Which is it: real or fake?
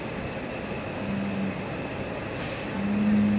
real